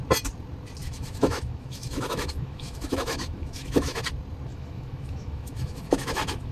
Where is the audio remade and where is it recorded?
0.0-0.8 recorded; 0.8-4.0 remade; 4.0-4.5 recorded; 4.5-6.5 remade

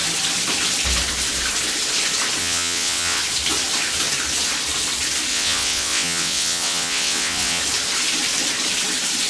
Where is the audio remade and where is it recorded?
0.0-2.4 recorded; 2.4-3.2 remade; 3.2-5.3 recorded; 5.3-7.6 remade; 7.6-9.3 recorded

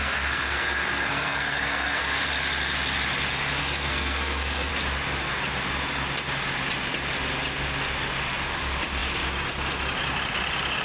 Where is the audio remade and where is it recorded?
0.0-2.3 remade; 2.3-3.6 recorded; 3.6-4.7 remade; 4.7-10.8 recorded